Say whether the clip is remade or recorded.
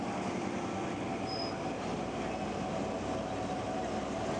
recorded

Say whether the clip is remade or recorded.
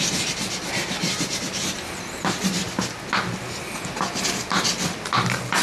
recorded